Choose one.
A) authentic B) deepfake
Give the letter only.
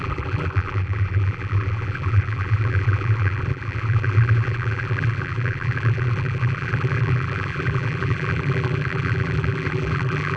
B